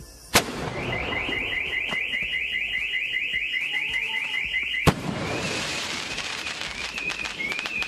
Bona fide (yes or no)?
no